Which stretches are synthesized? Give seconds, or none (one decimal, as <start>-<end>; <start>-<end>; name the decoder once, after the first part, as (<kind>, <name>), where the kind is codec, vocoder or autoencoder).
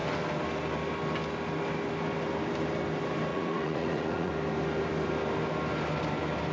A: 3.3-4.3 (vocoder, Vocos)